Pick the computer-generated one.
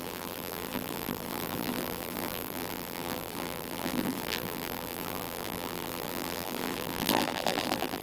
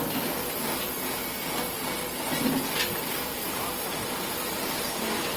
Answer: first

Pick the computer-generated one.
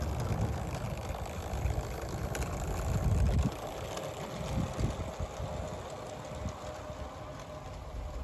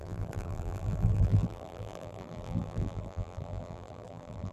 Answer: second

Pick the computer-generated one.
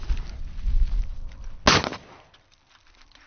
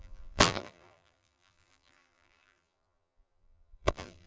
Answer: second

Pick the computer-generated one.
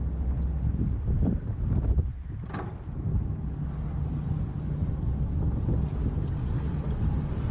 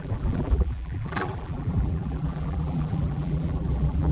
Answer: second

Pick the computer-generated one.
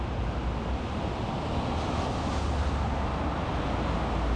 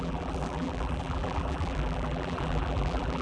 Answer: second